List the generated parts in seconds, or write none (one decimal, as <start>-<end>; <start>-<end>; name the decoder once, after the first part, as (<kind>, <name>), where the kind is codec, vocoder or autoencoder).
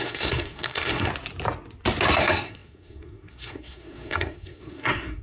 0.0-1.1 (codec, SNAC); 2.2-5.2